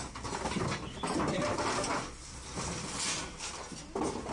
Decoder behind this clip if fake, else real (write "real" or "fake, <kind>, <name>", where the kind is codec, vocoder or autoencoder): real